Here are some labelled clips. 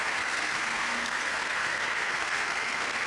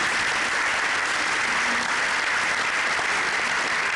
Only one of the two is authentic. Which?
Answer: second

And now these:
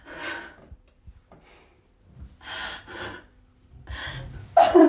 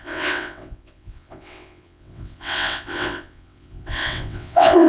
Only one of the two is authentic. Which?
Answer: first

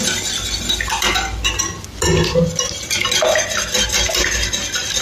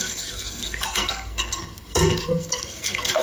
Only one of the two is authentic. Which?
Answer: first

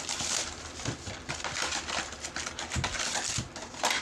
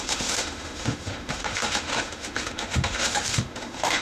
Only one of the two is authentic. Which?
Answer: first